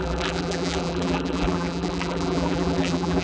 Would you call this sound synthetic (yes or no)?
yes